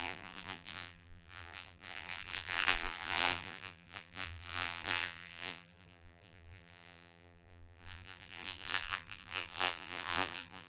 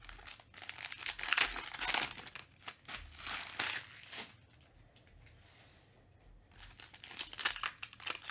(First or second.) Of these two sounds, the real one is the second